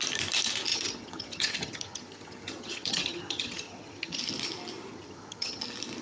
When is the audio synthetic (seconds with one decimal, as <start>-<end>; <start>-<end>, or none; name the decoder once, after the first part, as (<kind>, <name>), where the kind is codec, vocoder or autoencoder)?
0.7-4.2 (vocoder, HiFi-GAN); 4.9-5.6